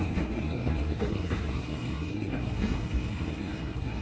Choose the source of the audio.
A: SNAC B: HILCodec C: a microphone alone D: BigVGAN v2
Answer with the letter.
A